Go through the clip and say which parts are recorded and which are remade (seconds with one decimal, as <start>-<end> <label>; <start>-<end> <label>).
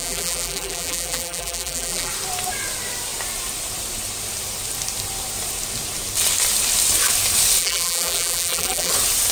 0.0-2.1 remade; 2.1-7.6 recorded; 7.6-8.9 remade; 8.9-9.3 recorded